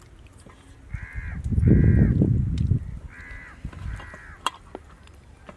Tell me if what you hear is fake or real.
real